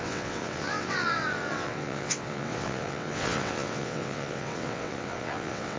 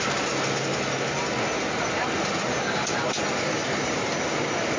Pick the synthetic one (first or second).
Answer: first